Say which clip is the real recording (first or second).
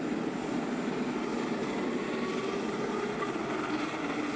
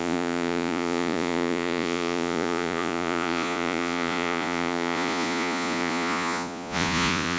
first